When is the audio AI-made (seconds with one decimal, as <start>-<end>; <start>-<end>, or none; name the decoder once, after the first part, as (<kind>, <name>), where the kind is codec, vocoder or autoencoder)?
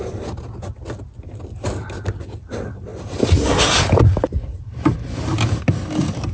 none